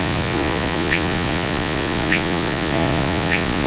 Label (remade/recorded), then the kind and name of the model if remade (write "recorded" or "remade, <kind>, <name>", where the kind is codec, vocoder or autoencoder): remade, vocoder, Vocos